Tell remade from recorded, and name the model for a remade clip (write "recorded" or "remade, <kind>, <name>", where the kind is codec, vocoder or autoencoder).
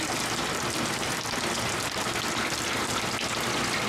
recorded